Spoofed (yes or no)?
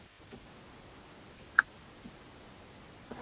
no